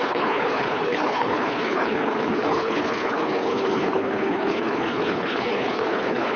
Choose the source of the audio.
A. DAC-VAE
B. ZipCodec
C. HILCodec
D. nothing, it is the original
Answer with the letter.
C